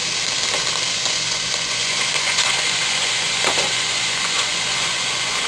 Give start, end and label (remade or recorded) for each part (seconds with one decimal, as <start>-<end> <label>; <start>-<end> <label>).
0.0-0.9 recorded; 0.9-5.5 remade